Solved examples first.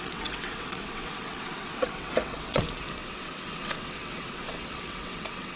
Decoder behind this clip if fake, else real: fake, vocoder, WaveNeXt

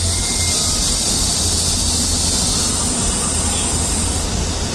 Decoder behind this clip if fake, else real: real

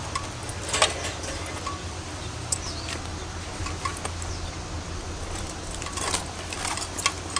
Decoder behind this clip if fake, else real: real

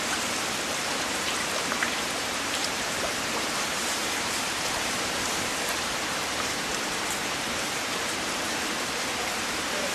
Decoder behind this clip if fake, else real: fake, vocoder, BigVGAN v2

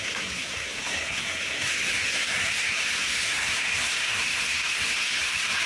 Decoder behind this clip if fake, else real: fake, codec, SNAC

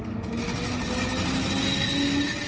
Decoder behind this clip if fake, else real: real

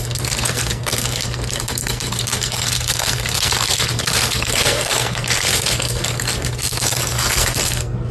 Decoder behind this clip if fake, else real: fake, codec, SNAC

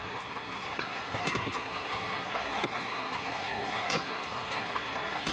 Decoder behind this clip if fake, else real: fake, codec, SNAC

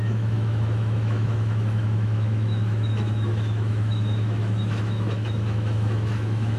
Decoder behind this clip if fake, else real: fake, autoencoder, DAC-VAE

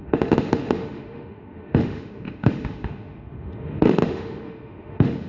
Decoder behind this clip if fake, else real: fake, autoencoder, DAC-VAE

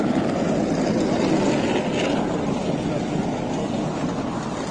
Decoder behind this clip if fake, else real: real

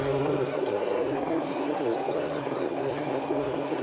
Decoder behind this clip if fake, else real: fake, codec, SNAC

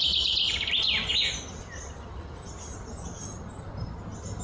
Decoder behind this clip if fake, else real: real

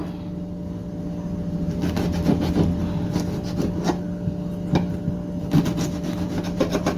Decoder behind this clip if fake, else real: real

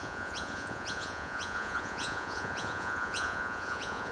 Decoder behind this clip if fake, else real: fake, vocoder, Vocos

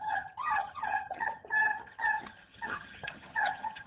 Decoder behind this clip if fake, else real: fake, vocoder, HiFi-GAN